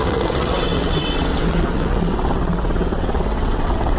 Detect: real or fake fake